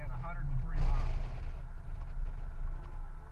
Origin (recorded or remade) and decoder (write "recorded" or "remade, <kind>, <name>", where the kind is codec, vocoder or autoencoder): recorded